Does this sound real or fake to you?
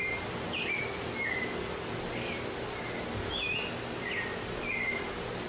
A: real